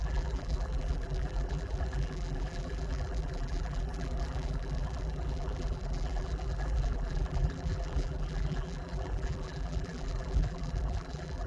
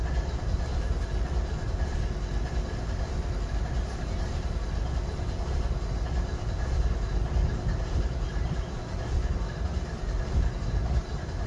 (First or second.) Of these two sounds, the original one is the second